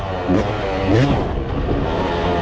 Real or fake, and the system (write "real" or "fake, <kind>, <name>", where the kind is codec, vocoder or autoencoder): real